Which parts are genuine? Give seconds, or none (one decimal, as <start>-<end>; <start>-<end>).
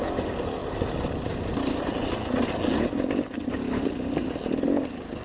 0.0-5.2